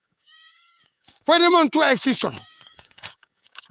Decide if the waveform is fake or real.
fake